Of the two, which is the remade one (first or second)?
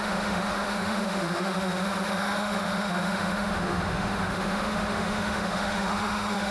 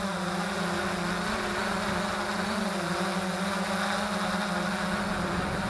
first